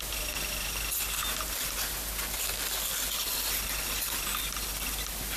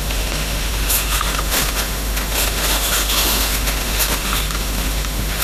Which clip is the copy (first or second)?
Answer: second